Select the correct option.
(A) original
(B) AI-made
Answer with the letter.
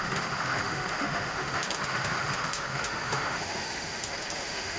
B